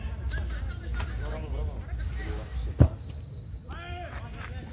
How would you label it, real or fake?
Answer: real